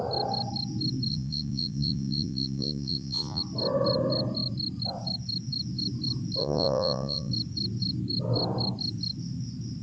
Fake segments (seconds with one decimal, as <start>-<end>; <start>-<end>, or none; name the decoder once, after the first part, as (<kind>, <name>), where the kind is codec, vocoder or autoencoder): 1.1-3.4 (vocoder, Vocos); 6.4-7.3